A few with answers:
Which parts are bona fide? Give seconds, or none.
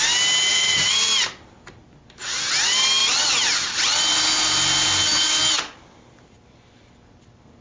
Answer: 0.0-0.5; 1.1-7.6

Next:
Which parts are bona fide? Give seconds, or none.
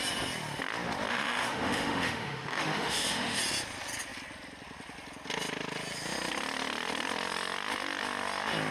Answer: 0.0-1.1; 3.4-8.7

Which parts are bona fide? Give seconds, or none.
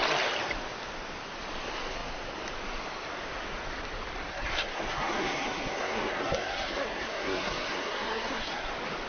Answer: 0.0-4.3; 8.7-9.1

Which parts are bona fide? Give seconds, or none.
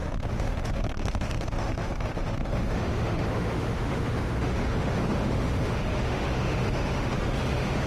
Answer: none